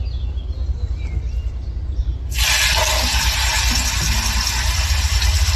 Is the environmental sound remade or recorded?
recorded